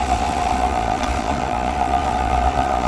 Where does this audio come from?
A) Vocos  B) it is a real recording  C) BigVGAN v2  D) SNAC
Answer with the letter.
A